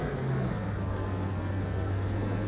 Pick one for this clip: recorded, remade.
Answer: remade